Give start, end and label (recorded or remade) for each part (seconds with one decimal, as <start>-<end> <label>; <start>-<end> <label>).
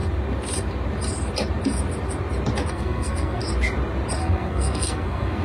0.0-2.7 recorded; 2.7-3.4 remade; 3.4-4.2 recorded; 4.2-5.4 remade